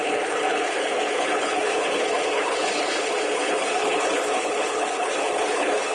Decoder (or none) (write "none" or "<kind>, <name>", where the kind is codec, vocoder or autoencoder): codec, HILCodec